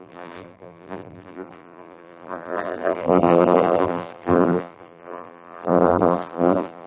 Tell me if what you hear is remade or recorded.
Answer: remade